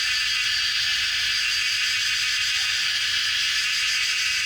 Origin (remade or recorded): recorded